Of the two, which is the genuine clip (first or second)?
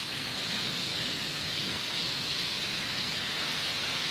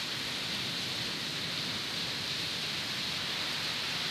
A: second